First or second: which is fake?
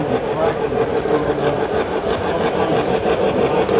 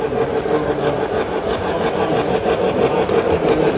first